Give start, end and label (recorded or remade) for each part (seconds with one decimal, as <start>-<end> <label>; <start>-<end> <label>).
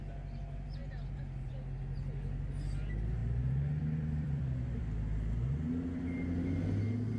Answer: 0.0-3.2 recorded; 3.2-4.8 remade; 4.8-7.2 recorded